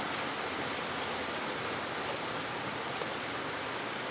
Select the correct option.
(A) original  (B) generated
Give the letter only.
A